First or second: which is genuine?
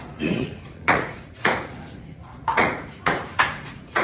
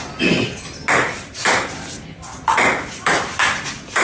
second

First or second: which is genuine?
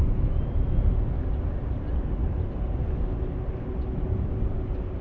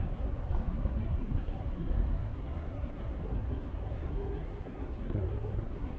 first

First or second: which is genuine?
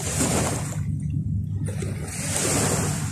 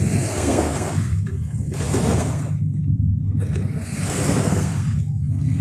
first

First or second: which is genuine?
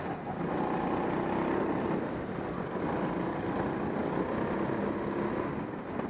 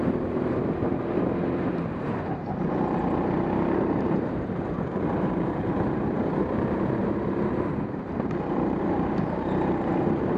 first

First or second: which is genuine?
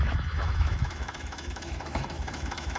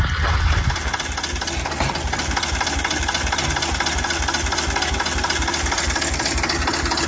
second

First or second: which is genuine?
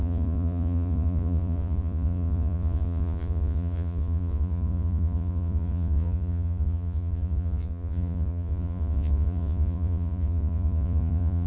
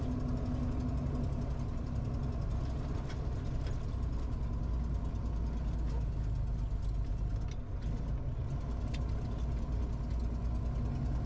second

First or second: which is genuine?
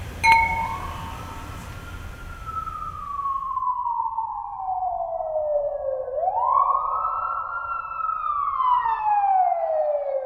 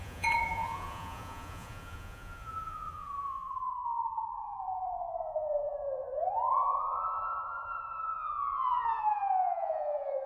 first